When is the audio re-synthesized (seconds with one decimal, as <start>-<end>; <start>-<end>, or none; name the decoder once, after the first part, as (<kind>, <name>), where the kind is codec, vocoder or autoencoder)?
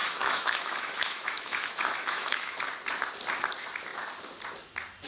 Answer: 0.0-2.6 (autoencoder, DAC-VAE)